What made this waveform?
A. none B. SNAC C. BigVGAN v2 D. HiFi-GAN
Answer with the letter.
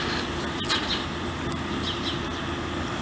A